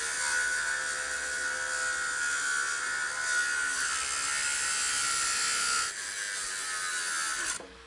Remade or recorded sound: recorded